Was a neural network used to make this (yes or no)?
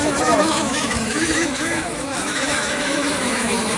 yes